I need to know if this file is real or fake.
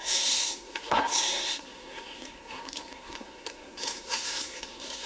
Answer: fake